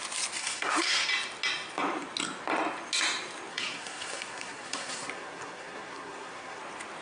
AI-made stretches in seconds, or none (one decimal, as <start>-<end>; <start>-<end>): 0.4-1.1; 3.5-6.6